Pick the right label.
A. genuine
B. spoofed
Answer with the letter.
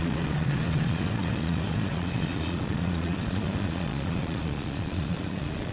B